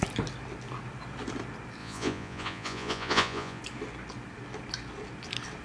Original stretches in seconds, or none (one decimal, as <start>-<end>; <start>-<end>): 0.0-1.8; 3.6-5.6